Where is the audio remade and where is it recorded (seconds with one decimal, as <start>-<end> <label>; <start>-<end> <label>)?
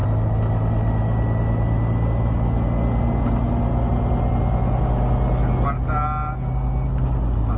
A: 0.0-7.6 recorded